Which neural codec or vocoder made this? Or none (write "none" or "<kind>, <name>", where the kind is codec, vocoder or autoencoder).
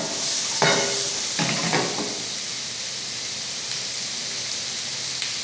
none